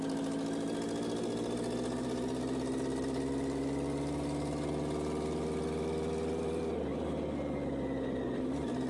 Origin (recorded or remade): recorded